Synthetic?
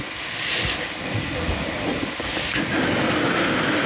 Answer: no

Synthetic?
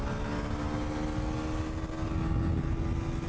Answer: no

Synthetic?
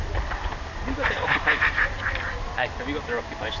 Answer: no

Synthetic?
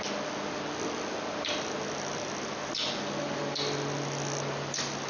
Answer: no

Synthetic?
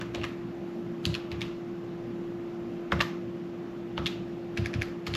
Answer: no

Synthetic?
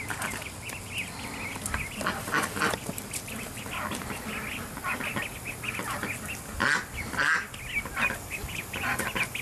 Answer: no